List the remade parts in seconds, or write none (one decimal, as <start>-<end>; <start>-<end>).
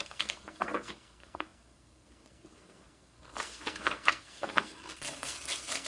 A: 0.0-5.9